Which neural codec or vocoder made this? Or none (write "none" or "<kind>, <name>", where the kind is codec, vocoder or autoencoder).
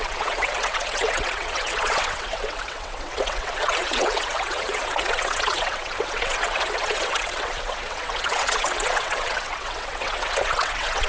vocoder, WaveNeXt